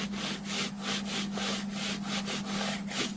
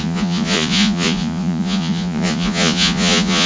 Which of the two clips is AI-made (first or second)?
second